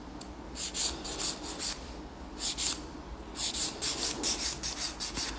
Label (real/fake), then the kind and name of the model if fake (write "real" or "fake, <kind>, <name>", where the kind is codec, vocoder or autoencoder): real